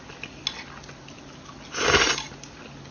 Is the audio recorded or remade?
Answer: recorded